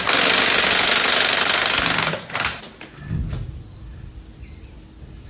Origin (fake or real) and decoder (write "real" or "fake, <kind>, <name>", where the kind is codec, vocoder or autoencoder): real